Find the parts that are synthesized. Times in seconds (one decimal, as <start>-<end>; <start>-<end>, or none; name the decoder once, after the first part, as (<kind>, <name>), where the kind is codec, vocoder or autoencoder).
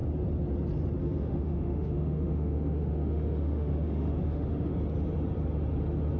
1.0-4.7 (autoencoder, DAC-VAE)